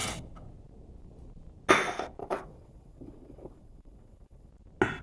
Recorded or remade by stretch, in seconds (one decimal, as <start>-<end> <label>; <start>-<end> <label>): 0.0-2.2 recorded; 2.2-4.5 remade; 4.5-5.0 recorded